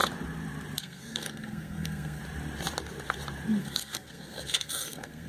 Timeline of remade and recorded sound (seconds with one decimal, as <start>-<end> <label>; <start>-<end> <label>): 0.0-0.8 recorded; 0.8-2.2 remade; 2.2-3.6 recorded; 3.6-5.3 remade